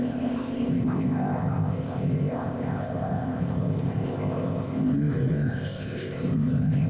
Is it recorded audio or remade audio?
remade